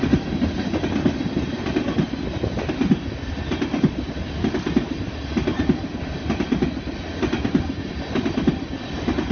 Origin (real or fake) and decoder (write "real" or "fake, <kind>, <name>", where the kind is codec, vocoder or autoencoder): real